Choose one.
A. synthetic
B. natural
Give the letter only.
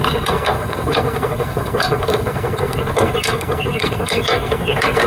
A